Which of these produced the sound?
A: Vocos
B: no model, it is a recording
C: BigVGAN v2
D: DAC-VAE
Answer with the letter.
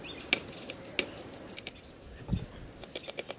B